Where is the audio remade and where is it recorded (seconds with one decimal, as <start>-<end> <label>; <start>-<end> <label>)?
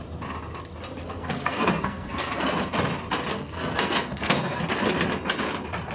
0.0-1.0 recorded; 1.0-2.7 remade; 2.7-3.3 recorded; 3.3-4.6 remade; 4.6-5.9 recorded